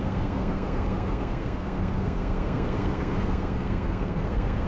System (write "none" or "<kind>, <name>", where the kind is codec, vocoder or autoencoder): codec, SNAC